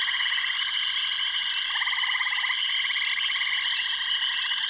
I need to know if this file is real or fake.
real